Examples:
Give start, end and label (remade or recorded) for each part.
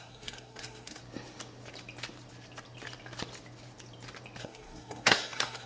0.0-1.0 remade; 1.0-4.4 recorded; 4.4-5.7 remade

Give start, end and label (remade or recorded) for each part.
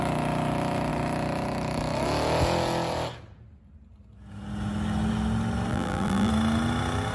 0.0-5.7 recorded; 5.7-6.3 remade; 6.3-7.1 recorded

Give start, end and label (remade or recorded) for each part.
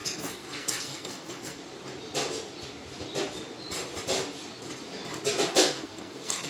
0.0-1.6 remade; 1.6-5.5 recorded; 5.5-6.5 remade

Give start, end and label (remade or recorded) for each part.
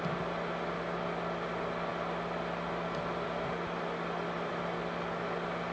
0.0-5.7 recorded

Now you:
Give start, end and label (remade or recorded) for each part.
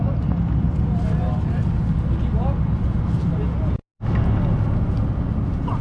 0.0-5.8 recorded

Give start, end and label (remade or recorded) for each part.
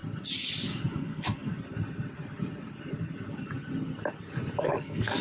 0.0-0.9 recorded; 0.9-1.5 remade; 1.5-4.6 recorded; 4.6-5.2 remade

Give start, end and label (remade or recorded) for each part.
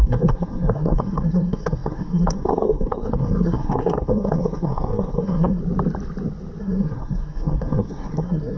0.0-5.6 remade; 5.6-6.6 recorded; 6.6-8.6 remade